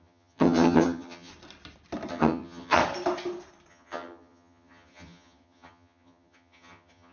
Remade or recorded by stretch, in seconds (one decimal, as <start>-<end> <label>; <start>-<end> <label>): 0.0-1.3 remade; 1.3-2.1 recorded; 2.1-2.8 remade; 2.8-3.7 recorded; 3.7-7.1 remade